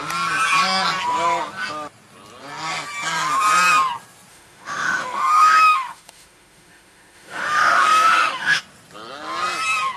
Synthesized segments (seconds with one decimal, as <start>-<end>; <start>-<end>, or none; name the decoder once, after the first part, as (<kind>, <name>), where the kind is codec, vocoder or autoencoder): 4.3-8.6 (autoencoder, DAC-VAE)

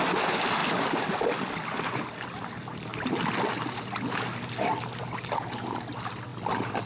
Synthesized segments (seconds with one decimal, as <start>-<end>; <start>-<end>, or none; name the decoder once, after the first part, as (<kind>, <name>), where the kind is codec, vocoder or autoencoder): 2.9-5.0 (vocoder, BigVGAN v2)

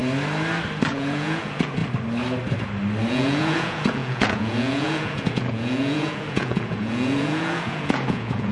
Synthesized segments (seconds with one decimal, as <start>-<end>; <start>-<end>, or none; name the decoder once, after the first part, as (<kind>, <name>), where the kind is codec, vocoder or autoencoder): 0.9-1.8 (vocoder, Vocos); 3.1-8.5

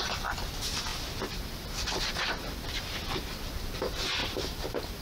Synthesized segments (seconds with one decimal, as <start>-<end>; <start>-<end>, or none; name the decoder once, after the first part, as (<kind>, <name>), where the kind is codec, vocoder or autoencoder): 0.9-3.8 (vocoder, BigVGAN v2); 4.2-5.0